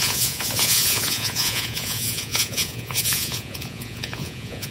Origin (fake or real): fake